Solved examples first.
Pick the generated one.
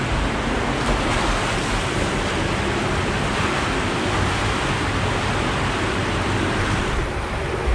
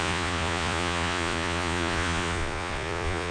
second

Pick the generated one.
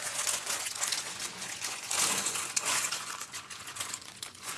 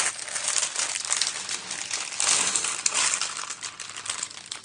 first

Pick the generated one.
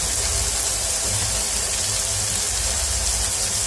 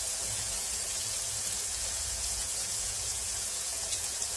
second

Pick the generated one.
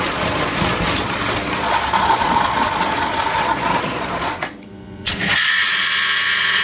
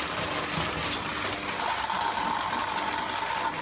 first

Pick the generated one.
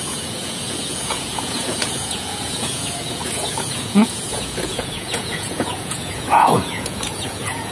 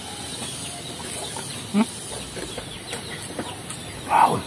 first